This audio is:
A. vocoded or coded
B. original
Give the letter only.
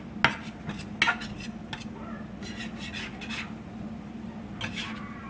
B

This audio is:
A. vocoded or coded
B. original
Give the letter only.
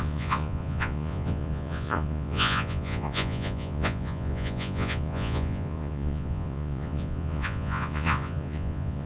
A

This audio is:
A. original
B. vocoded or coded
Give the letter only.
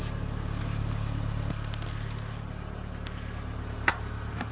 A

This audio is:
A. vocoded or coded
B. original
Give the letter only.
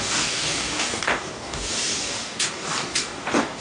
A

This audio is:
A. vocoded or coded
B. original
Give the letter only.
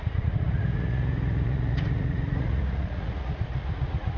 A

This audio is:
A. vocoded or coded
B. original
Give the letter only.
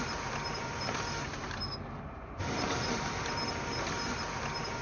B